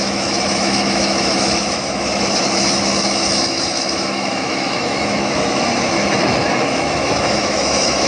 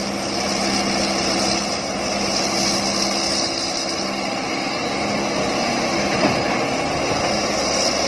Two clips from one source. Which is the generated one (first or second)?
first